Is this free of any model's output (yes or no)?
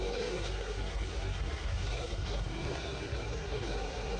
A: no